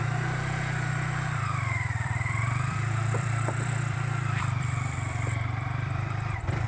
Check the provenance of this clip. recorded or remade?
remade